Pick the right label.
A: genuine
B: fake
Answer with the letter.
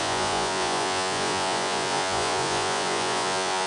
B